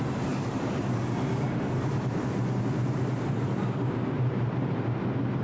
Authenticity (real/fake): fake